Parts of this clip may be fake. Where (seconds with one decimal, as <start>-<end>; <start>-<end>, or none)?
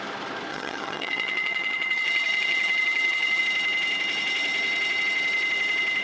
0.5-3.4